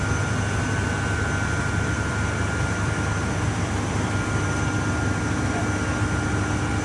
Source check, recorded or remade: recorded